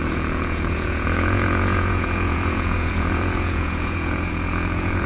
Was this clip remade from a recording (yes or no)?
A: yes